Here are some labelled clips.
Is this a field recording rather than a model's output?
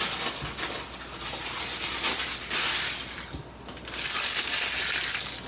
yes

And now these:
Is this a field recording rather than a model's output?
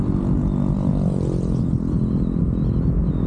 yes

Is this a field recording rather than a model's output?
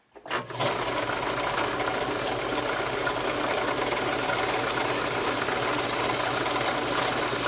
yes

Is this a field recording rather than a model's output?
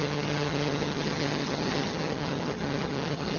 no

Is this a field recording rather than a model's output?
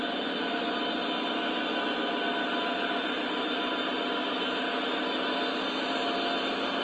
yes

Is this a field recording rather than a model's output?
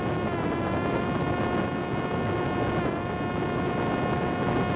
yes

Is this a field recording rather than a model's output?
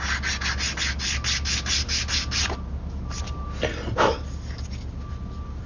yes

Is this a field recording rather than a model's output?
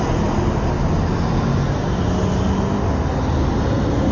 yes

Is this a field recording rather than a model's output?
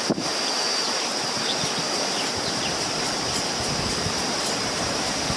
no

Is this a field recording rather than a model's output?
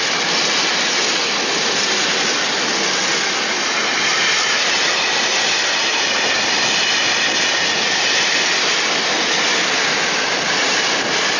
yes